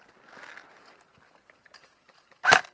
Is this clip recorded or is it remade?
recorded